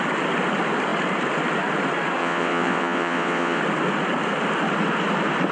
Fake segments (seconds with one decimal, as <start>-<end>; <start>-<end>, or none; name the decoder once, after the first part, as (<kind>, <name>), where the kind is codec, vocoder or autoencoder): 2.2-3.6 (vocoder, WaveNeXt)